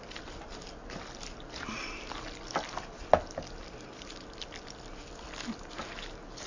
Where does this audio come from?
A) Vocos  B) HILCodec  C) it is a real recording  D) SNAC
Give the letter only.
C